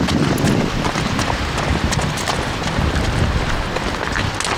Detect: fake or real real